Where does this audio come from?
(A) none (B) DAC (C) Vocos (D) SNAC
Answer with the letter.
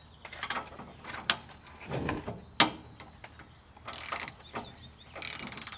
A